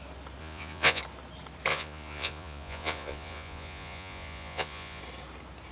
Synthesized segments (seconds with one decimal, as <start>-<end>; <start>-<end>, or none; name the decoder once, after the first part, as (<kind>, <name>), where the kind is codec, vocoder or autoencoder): 0.4-1.0 (vocoder, Vocos); 1.7-5.0